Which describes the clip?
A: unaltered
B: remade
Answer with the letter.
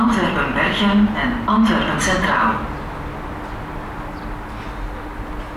A